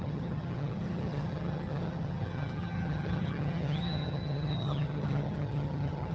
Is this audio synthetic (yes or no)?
yes